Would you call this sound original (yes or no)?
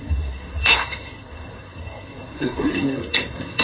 no